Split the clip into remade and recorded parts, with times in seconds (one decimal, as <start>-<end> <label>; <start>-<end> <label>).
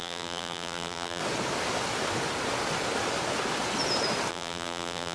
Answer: 0.0-1.2 remade; 1.2-4.3 recorded; 4.3-5.1 remade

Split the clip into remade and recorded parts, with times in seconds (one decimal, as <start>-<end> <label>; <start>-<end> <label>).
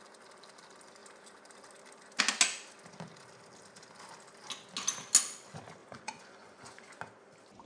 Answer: 0.0-5.8 recorded; 5.8-7.0 remade; 7.0-7.7 recorded